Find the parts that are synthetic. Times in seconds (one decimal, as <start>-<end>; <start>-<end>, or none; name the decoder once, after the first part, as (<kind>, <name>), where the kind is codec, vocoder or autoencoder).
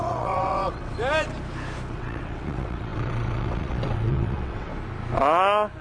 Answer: 0.0-1.0 (vocoder, WaveNeXt); 1.9-4.7